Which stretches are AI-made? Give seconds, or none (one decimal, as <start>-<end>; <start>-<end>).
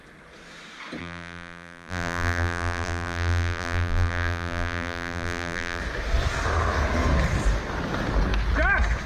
1.0-5.8